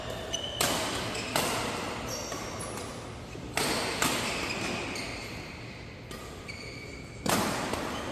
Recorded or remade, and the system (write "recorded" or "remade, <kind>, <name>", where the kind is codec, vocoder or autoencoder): recorded